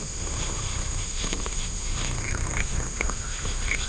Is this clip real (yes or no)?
no